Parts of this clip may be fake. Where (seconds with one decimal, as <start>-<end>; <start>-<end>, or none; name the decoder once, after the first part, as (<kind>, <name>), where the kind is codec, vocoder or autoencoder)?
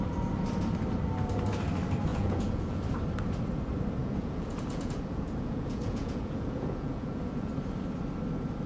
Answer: 2.1-2.8 (vocoder, Vocos); 4.0-7.5